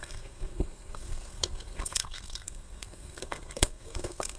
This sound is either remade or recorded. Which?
remade